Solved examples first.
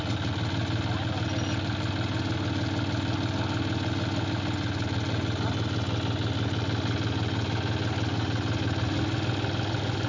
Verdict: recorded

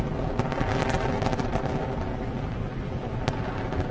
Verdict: recorded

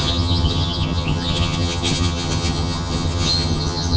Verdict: remade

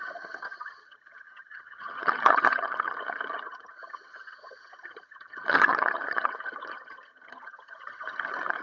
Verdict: remade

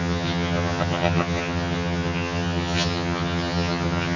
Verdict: remade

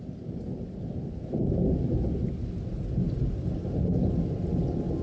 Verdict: recorded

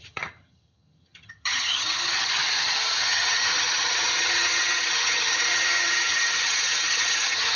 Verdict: remade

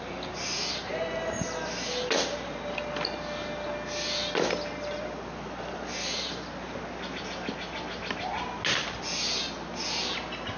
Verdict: recorded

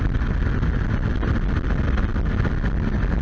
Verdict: recorded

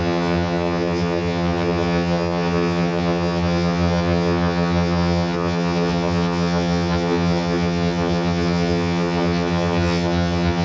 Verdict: remade